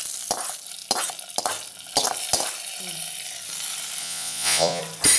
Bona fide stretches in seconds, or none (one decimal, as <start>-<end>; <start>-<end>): 0.0-4.0; 4.8-5.2